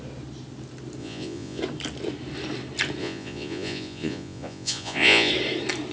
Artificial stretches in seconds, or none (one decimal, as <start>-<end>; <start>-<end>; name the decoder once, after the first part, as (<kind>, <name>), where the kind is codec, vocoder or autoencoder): 1.0-1.6 (vocoder, Vocos); 3.0-5.3